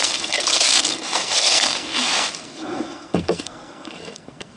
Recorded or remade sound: remade